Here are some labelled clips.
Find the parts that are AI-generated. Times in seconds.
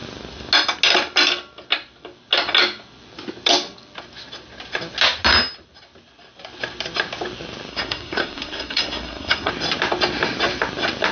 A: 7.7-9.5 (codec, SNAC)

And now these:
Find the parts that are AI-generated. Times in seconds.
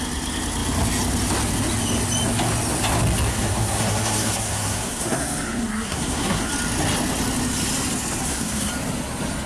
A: 3.3-6.5 (codec, SNAC); 8.2-8.7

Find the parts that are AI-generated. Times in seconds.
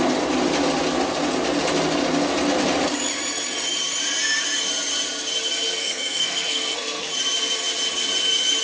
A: 5.8-7.1 (codec, SNAC)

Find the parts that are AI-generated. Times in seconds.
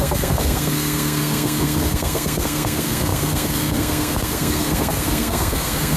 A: 0.0-6.0 (codec, SNAC)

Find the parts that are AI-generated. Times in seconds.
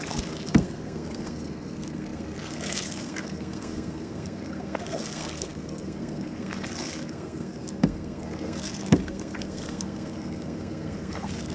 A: 0.0-11.5 (codec, SNAC)